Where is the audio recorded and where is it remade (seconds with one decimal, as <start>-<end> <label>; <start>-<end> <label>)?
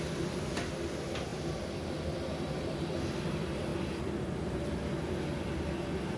0.0-1.3 recorded; 1.3-2.8 remade; 2.8-3.7 recorded; 3.7-4.8 remade; 4.8-6.2 recorded